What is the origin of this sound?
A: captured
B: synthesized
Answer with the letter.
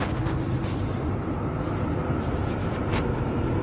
B